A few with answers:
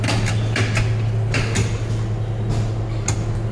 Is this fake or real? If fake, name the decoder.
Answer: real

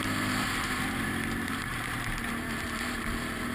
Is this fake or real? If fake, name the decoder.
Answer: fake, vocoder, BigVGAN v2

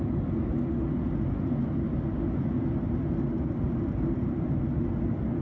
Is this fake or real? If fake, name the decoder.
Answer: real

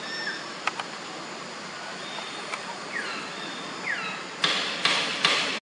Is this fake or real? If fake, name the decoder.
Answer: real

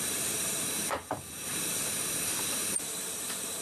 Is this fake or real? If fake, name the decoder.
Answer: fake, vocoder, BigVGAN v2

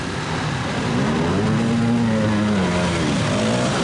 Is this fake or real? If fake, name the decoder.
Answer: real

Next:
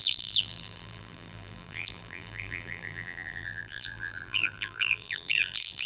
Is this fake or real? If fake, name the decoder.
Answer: fake, vocoder, BigVGAN v2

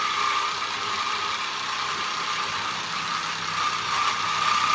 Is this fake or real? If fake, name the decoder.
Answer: fake, vocoder, BigVGAN v2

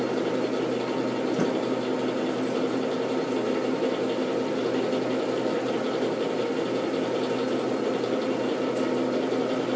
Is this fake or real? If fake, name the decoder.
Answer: real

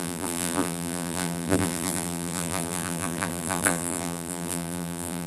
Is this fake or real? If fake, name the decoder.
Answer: fake, vocoder, BigVGAN v2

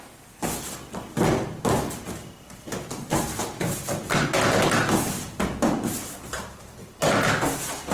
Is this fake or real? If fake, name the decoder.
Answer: real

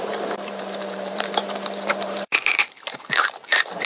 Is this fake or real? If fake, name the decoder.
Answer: fake, vocoder, BigVGAN v2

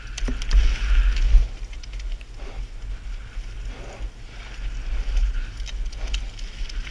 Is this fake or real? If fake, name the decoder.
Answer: real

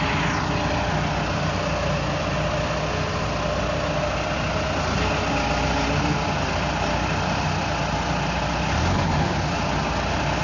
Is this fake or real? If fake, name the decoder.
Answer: real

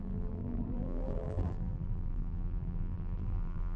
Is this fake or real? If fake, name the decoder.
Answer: fake, vocoder, BigVGAN v2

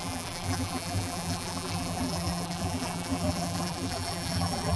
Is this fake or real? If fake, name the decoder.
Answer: fake, vocoder, BigVGAN v2